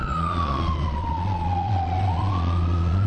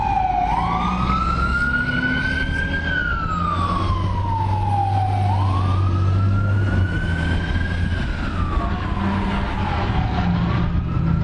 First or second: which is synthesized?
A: first